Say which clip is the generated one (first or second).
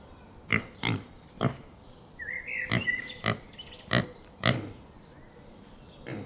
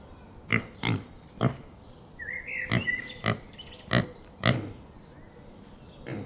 first